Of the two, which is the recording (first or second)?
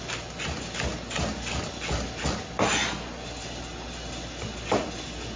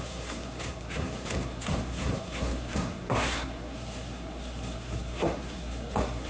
first